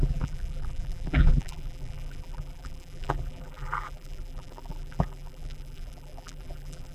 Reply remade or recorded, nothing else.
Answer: remade